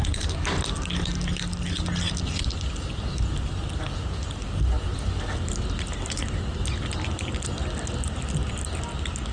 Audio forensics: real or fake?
real